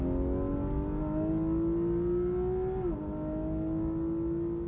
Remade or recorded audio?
recorded